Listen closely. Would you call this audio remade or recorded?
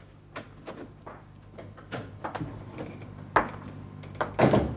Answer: recorded